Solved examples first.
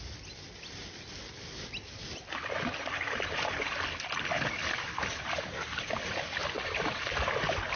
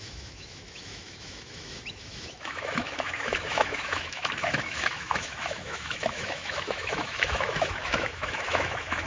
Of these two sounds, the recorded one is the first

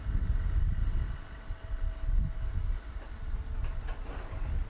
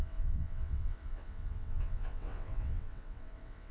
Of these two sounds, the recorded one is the first